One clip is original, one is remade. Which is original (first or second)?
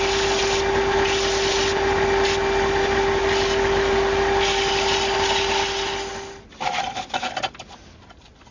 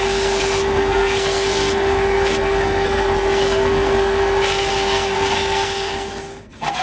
first